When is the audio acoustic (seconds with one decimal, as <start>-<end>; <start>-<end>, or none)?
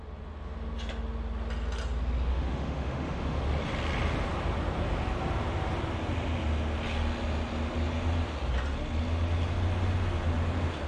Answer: 0.0-2.3; 3.4-10.9